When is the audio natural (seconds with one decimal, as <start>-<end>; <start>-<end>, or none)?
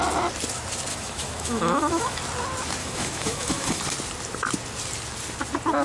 0.0-0.9; 2.2-2.8; 3.8-5.8